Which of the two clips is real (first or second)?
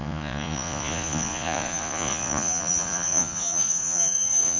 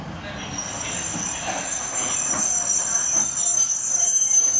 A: second